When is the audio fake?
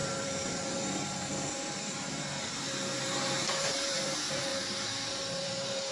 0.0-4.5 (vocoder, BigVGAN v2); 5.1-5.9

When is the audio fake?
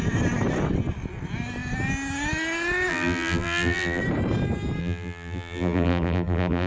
2.9-4.0 (vocoder, BigVGAN v2); 4.8-6.7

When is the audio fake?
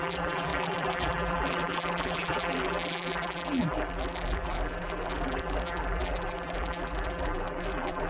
0.0-8.1 (vocoder, BigVGAN v2)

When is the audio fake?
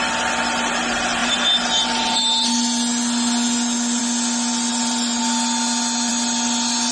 4.7-5.2 (vocoder, BigVGAN v2)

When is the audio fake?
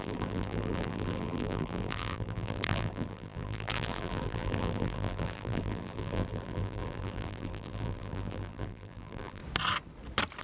0.0-9.4 (vocoder, BigVGAN v2)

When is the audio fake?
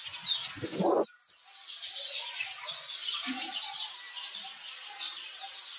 3.0-3.9 (vocoder, BigVGAN v2)